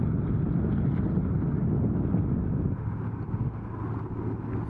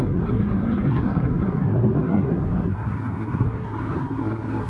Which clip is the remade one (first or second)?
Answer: second